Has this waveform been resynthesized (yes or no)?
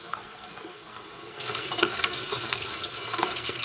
yes